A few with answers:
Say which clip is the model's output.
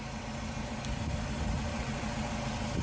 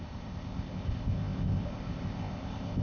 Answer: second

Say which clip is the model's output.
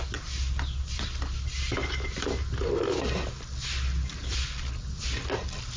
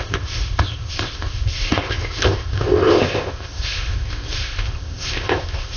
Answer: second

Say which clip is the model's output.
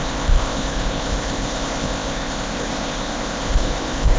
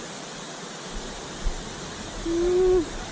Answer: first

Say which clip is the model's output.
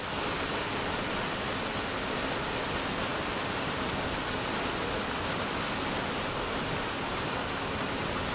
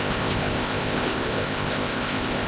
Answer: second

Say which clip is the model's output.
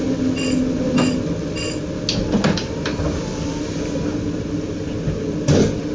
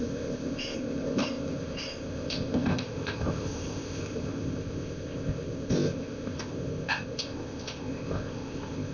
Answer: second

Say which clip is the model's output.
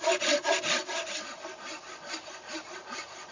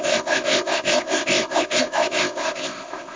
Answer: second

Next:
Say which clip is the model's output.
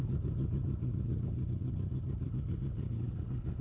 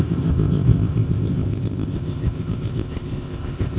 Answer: second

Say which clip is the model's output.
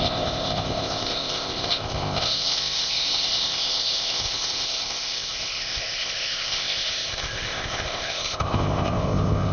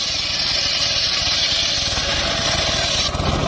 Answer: first